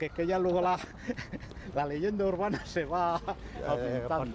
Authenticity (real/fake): real